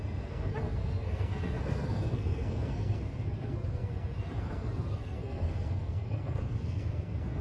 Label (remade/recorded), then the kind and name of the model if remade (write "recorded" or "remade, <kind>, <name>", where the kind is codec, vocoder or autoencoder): remade, codec, SNAC